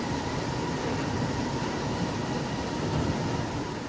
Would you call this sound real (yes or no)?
yes